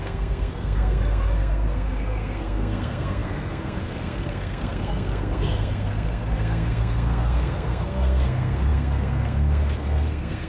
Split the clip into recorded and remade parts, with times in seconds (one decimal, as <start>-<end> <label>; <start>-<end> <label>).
0.0-10.5 remade